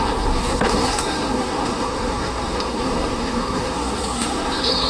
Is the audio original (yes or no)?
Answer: no